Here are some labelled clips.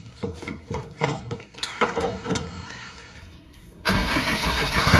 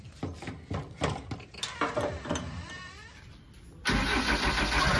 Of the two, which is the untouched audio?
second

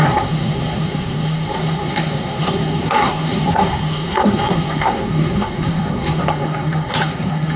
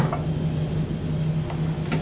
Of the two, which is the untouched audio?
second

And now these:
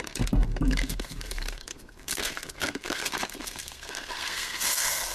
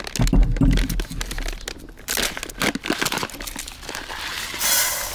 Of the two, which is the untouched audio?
second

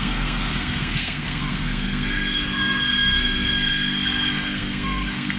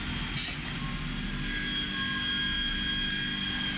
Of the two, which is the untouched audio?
second